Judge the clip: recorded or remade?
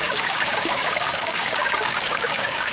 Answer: remade